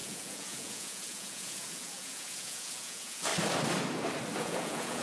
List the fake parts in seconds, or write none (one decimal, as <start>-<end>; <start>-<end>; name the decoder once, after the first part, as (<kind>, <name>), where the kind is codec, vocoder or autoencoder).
0.0-3.3 (vocoder, Vocos); 4.4-5.0